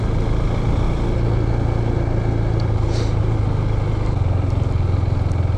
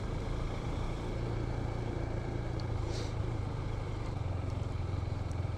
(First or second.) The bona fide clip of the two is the first